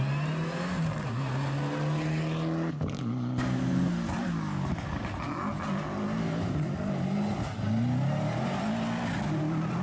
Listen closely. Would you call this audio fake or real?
real